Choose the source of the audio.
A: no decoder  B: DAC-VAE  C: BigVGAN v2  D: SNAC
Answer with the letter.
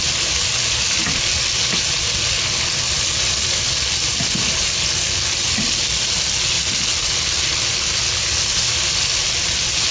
A